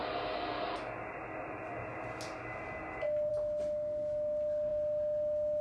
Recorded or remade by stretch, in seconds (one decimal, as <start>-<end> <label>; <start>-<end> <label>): 0.0-5.6 recorded